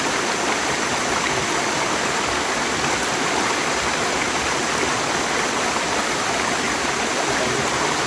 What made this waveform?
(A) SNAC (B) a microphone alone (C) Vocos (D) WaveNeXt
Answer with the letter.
B